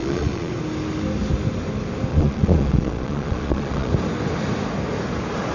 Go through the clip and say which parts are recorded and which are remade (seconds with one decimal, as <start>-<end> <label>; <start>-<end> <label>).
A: 0.0-0.5 remade; 0.5-2.1 recorded; 2.1-3.9 remade; 3.9-5.5 recorded